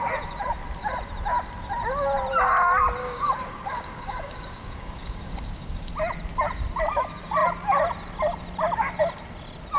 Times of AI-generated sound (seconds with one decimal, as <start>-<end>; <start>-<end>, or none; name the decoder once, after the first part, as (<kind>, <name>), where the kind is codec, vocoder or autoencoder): 3.0-5.9 (codec, DAC)